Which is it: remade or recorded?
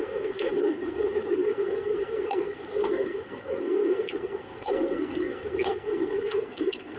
remade